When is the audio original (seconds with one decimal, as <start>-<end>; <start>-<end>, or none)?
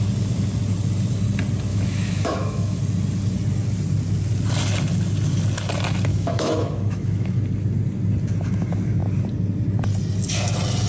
0.0-1.7; 2.8-6.1; 7.4-10.9